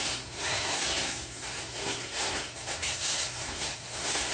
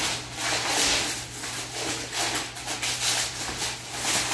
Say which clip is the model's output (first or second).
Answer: first